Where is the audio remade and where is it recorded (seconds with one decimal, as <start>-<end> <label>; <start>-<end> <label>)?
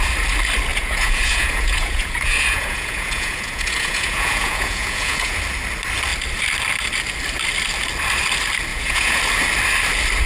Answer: 0.0-0.7 recorded; 0.7-5.4 remade; 5.4-8.7 recorded; 8.7-9.2 remade; 9.2-10.3 recorded